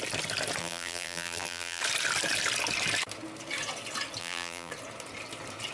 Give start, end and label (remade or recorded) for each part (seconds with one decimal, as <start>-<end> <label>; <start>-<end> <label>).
0.0-0.6 recorded; 0.6-1.8 remade; 1.8-4.2 recorded; 4.2-4.7 remade; 4.7-5.7 recorded